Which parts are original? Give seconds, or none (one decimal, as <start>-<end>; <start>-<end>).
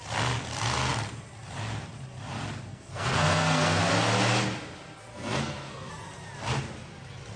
0.0-2.7; 3.8-5.1; 5.9-7.4